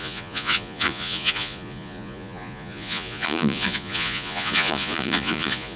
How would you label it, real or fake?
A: fake